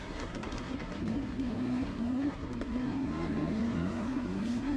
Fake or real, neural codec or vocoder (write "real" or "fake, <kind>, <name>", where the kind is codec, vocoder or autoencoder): fake, codec, SNAC